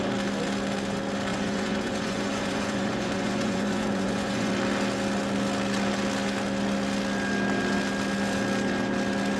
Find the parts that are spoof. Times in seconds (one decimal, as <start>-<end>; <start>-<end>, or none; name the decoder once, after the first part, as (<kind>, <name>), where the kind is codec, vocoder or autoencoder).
1.3-4.5 (vocoder, Vocos)